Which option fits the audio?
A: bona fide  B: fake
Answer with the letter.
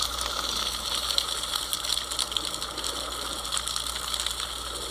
A